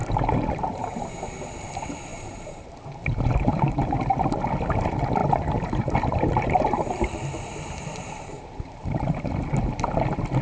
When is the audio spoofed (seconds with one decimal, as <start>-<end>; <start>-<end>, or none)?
0.0-1.2; 2.1-2.7; 3.5-4.0; 5.2-9.4

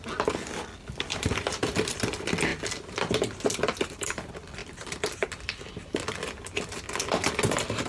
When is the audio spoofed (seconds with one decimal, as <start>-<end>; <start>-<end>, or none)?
none

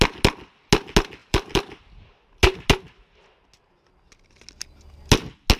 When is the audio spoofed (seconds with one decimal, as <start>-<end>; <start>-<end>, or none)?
1.2-1.8

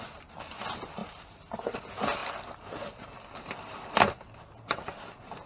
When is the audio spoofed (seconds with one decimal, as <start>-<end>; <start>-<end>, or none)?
1.0-1.8; 2.2-4.6

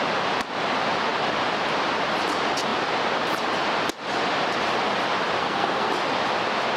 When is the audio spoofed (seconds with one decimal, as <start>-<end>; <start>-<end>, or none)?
5.4-5.9